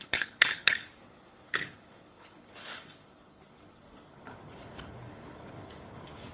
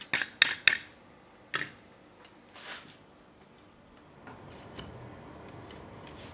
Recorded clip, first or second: second